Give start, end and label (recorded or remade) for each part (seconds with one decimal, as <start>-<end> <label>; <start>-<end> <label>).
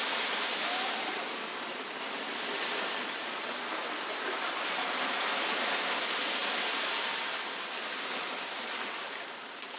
0.0-9.8 recorded